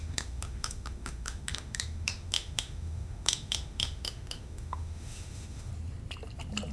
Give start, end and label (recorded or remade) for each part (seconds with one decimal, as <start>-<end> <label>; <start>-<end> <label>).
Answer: 0.0-5.7 remade; 5.7-6.7 recorded